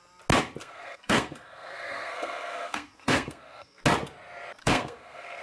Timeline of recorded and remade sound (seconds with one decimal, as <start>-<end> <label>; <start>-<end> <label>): 0.0-0.6 recorded; 0.6-3.8 remade; 3.8-4.6 recorded; 4.6-5.4 remade